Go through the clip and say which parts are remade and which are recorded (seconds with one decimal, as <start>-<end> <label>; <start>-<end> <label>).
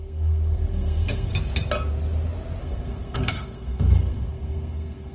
0.0-1.3 remade; 1.3-2.6 recorded; 2.6-5.1 remade